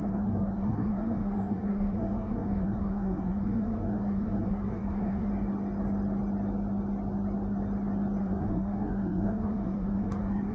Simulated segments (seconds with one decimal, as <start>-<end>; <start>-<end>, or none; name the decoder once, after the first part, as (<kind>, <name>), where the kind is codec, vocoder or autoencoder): 0.0-5.3 (codec, SNAC); 8.2-10.5